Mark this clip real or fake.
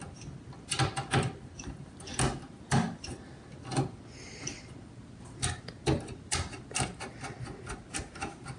real